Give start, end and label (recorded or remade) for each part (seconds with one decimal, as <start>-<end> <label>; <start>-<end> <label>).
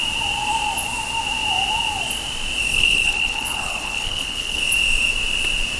0.0-2.7 recorded; 2.7-4.6 remade; 4.6-5.8 recorded